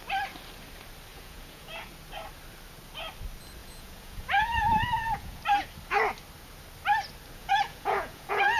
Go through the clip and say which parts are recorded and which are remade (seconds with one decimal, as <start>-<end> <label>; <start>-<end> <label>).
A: 0.0-1.1 recorded; 1.1-1.9 remade; 1.9-3.6 recorded; 3.6-5.4 remade; 5.4-7.4 recorded; 7.4-8.6 remade